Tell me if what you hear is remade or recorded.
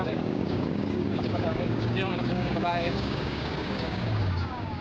remade